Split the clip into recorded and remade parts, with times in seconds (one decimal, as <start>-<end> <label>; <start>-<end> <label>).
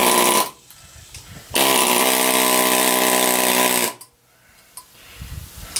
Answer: 0.0-5.8 recorded